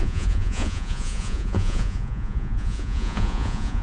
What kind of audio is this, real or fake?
fake